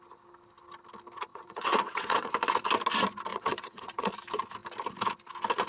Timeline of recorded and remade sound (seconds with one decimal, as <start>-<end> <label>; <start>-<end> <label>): 0.0-1.3 recorded; 1.3-2.3 remade; 2.3-3.3 recorded; 3.3-4.1 remade; 4.1-5.7 recorded